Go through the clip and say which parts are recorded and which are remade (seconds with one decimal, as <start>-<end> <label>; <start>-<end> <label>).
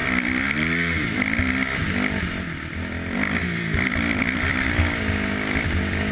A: 0.0-6.1 recorded